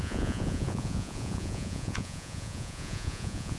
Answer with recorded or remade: remade